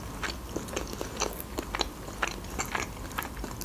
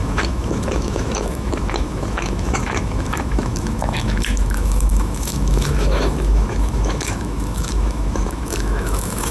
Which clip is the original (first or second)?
first